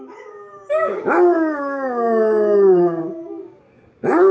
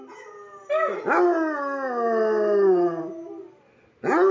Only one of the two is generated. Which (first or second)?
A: first